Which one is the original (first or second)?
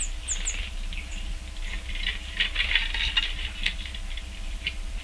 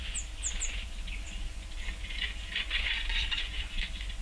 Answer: first